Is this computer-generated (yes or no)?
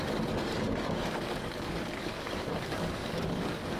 yes